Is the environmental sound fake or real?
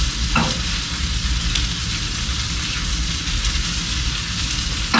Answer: real